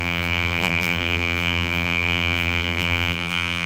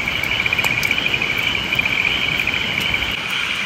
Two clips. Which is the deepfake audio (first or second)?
first